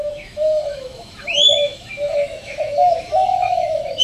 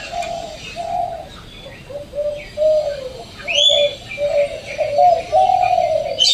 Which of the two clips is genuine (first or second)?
second